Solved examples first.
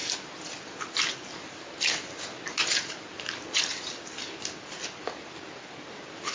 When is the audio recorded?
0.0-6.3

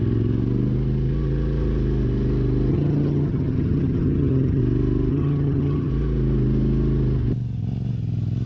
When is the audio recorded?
0.0-2.7; 4.6-5.1; 5.9-8.5

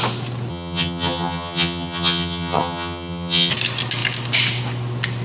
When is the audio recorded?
0.0-0.5; 3.5-5.2

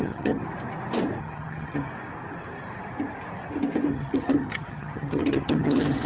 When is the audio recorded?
0.4-1.2; 1.9-3.9

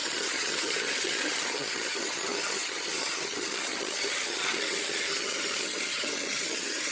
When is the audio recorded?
none

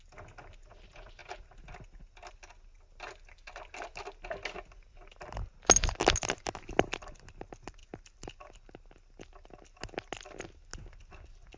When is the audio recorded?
0.0-11.6

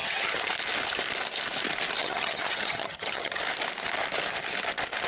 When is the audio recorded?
0.5-2.0; 3.4-5.1

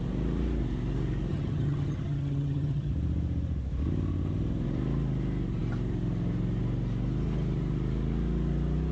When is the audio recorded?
0.0-1.3; 2.9-8.9